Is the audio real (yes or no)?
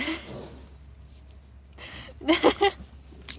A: yes